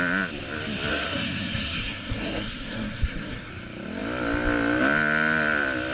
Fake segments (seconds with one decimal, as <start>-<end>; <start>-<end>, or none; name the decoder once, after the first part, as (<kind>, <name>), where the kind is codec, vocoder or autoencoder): 0.9-3.5 (codec, SNAC)